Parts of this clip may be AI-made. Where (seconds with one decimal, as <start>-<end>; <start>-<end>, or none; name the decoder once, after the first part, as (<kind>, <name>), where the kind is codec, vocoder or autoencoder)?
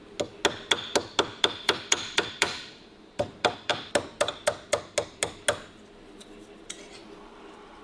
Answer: 1.3-3.7 (vocoder, BigVGAN v2); 7.0-7.8